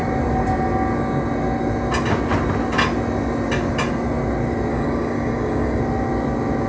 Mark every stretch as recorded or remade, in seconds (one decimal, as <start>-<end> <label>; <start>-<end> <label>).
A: 0.0-4.7 recorded; 4.7-5.8 remade; 5.8-6.7 recorded